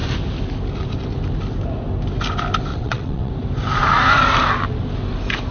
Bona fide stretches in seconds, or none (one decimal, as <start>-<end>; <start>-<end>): 0.0-2.7; 3.3-5.5